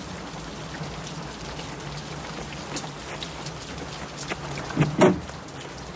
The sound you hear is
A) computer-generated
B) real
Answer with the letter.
B